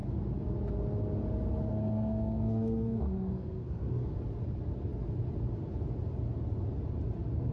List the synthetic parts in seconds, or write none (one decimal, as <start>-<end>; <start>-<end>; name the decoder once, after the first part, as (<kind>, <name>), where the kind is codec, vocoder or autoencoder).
1.7-4.1 (codec, SNAC)